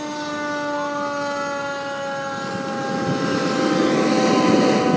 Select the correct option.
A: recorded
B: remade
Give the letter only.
A